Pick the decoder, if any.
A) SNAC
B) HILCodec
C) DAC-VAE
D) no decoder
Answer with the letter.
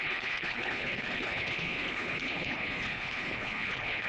B